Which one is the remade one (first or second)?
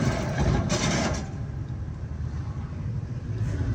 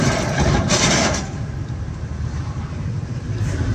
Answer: second